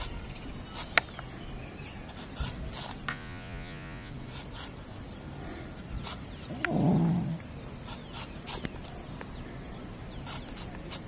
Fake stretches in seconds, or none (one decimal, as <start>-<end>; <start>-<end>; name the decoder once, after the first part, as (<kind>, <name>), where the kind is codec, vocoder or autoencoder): 3.1-4.1 (vocoder, Vocos)